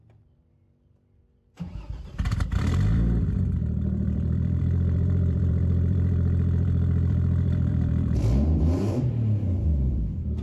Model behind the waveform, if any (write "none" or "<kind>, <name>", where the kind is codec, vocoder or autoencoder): vocoder, BigVGAN v2